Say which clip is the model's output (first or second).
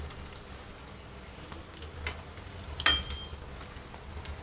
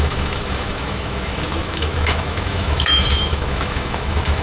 second